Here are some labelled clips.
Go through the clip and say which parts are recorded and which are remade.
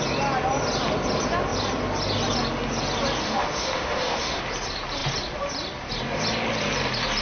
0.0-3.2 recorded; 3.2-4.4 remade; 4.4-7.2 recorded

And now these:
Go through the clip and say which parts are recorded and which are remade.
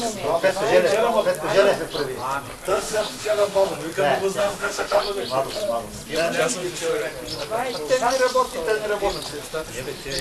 0.0-2.7 recorded; 2.7-3.7 remade; 3.7-4.4 recorded; 4.4-5.0 remade; 5.0-10.2 recorded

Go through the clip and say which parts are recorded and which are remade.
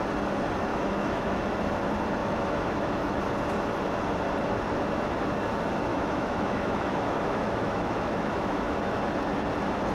0.0-0.7 recorded; 0.7-1.4 remade; 1.4-2.2 recorded; 2.2-3.2 remade; 3.2-5.9 recorded; 5.9-9.0 remade; 9.0-9.9 recorded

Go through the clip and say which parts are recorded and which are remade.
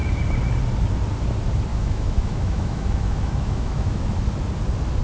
0.0-1.7 recorded; 1.7-4.2 remade; 4.2-5.0 recorded